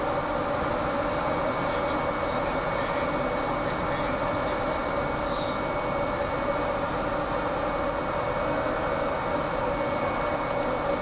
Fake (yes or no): no